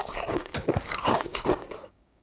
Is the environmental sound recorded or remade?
remade